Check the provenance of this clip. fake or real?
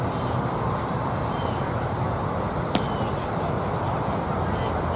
real